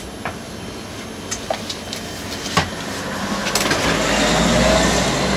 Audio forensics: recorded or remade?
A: recorded